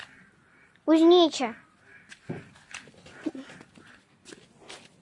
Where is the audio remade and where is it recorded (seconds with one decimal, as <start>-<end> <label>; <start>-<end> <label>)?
0.0-5.0 recorded